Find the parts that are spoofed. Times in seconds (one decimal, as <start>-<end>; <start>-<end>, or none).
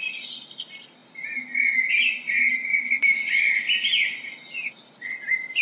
2.7-3.5